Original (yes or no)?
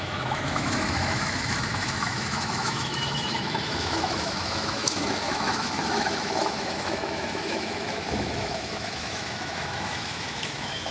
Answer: no